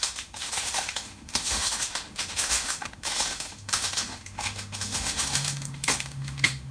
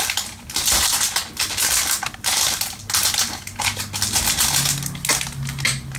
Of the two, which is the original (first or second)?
second